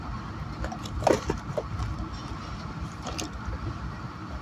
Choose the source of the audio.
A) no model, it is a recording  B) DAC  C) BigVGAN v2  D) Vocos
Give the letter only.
A